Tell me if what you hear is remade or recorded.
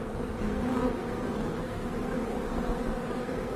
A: remade